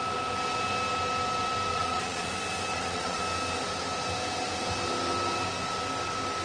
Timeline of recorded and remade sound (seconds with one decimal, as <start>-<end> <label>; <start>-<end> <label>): 0.0-1.7 recorded; 1.7-2.3 remade; 2.3-2.7 recorded; 2.7-3.2 remade; 3.2-6.4 recorded